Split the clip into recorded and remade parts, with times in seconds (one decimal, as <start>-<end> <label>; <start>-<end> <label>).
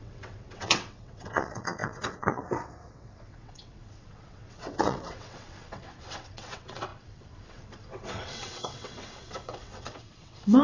0.0-10.6 remade